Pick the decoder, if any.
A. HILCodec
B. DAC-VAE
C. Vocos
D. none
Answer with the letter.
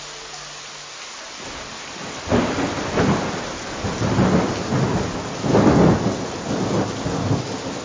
D